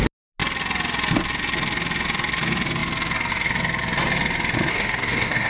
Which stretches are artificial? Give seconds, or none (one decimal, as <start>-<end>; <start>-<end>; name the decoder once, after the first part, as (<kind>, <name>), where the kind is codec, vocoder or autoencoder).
4.7-5.5 (codec, SNAC)